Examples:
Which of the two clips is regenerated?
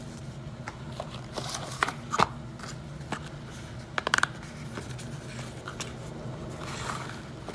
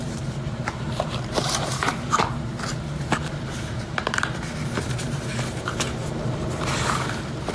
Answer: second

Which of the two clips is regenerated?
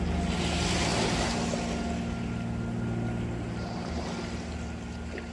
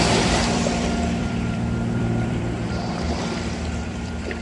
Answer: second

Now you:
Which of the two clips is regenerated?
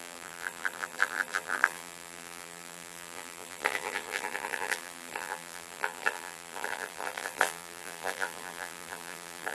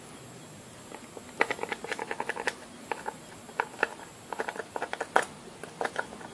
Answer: first